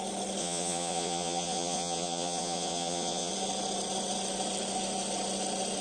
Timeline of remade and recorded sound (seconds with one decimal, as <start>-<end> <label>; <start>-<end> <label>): 0.0-0.4 recorded; 0.4-3.3 remade; 3.3-5.8 recorded